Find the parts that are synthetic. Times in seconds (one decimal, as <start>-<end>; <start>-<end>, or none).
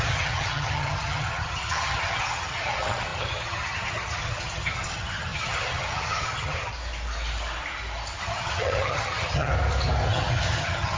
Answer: 0.0-6.7; 8.2-9.5; 10.1-11.0